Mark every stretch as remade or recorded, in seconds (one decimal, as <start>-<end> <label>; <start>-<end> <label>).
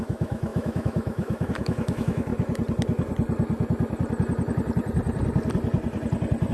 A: 0.0-2.3 remade; 2.3-6.5 recorded